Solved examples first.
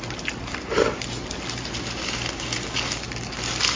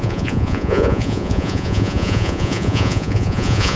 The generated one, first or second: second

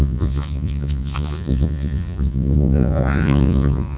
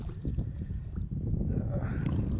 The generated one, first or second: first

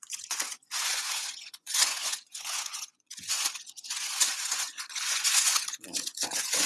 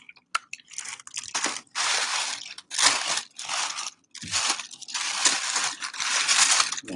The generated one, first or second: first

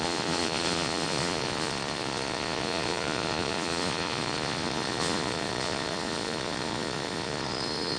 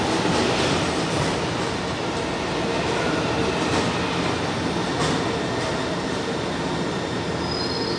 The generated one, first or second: first